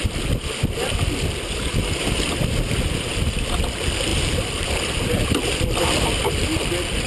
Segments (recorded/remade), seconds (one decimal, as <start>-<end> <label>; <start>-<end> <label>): 0.0-4.1 recorded; 4.1-4.7 remade; 4.7-7.1 recorded